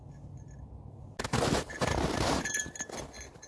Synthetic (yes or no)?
no